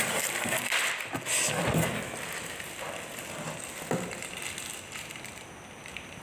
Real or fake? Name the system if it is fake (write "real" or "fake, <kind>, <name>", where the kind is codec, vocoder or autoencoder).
real